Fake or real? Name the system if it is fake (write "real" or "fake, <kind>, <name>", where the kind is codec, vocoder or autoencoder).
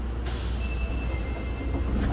real